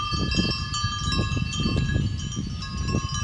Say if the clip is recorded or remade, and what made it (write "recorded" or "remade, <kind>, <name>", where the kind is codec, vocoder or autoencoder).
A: recorded